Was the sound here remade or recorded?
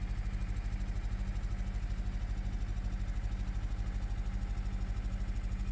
recorded